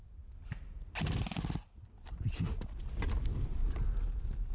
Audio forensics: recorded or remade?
recorded